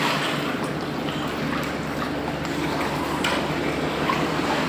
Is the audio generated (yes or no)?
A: no